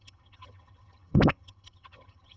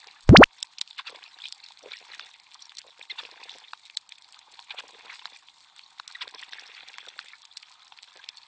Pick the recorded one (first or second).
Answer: second